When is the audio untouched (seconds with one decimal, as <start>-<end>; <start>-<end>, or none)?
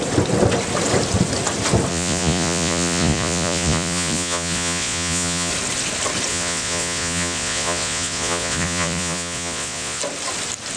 0.0-1.9; 5.5-6.3; 10.0-10.8